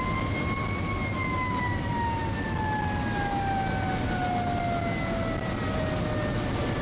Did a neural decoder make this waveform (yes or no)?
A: no